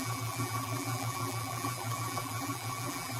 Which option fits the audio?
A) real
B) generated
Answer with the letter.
B